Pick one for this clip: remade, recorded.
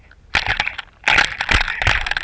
recorded